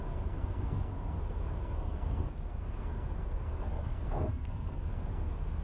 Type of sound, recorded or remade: remade